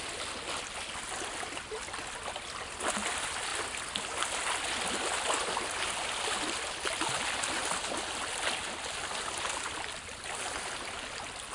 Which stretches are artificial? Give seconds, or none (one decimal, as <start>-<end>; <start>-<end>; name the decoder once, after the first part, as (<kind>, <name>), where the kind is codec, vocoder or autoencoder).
none